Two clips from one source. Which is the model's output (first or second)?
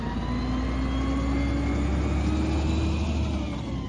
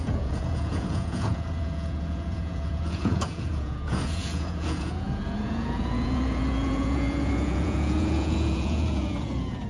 second